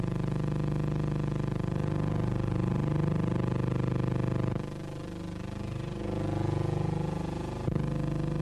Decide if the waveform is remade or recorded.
recorded